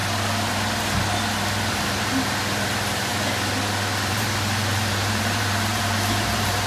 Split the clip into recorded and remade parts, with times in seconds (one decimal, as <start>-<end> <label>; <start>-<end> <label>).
0.0-1.7 recorded; 1.7-3.1 remade; 3.1-4.1 recorded; 4.1-6.7 remade